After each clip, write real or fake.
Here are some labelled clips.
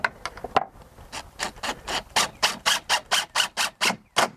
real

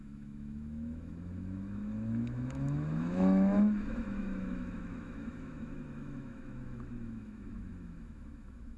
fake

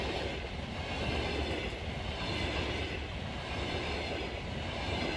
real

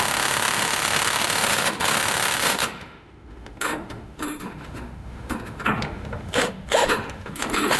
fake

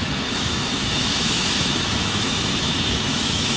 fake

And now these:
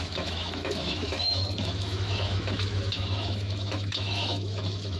fake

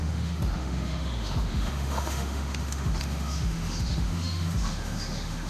fake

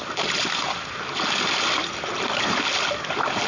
real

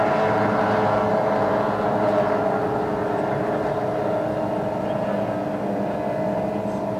real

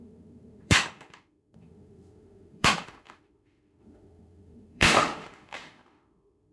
fake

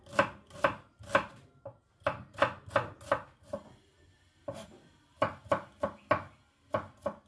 real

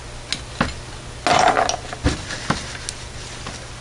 real